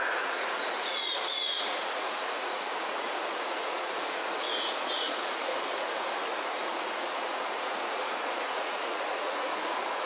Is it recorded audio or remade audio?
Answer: remade